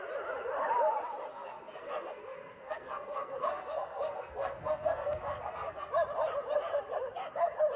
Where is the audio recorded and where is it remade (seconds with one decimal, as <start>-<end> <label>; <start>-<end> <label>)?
0.0-1.3 recorded; 1.3-5.9 remade; 5.9-7.8 recorded